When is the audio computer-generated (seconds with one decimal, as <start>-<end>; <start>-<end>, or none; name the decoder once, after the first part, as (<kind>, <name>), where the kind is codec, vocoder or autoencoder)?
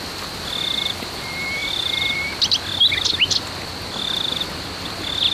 1.6-2.4 (vocoder, BigVGAN v2)